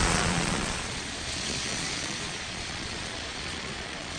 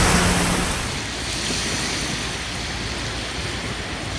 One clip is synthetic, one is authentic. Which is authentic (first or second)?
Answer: second